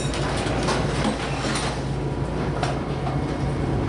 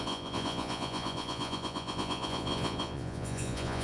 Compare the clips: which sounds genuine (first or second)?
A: first